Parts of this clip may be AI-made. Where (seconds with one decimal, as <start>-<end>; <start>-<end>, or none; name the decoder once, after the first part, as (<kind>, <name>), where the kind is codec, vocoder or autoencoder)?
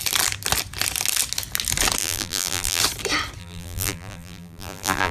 2.0-2.8 (vocoder, BigVGAN v2); 3.4-5.1